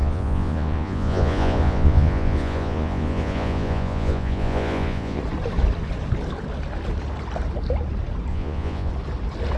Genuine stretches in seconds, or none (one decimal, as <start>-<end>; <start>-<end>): 5.2-8.3; 8.9-9.6